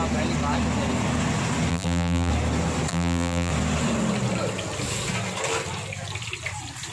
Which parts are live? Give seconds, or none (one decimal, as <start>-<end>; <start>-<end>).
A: 0.0-1.7; 2.3-2.9; 3.5-6.9